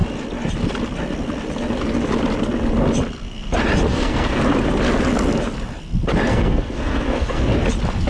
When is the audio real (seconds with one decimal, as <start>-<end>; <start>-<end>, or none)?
0.0-3.9; 4.4-6.3; 7.5-8.1